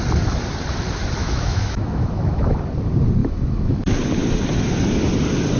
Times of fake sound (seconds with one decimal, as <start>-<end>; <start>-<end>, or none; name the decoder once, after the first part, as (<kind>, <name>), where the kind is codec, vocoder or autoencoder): 1.2-2.6 (autoencoder, DAC-VAE); 3.2-3.8